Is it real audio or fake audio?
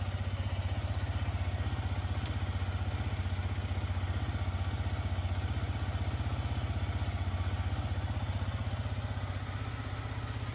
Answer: real